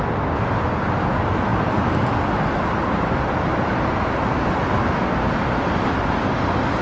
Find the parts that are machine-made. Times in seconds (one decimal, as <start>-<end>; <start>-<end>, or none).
none